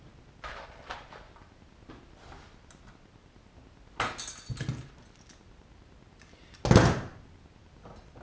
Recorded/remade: recorded